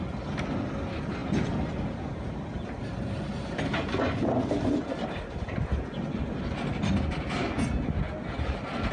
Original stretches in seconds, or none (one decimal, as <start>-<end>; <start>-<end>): 0.0-8.9